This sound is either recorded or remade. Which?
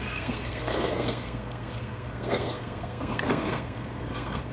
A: remade